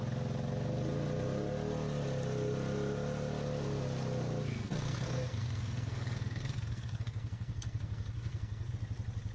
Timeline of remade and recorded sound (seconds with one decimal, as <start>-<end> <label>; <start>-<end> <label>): 0.0-4.5 recorded; 4.5-8.7 remade; 8.7-9.3 recorded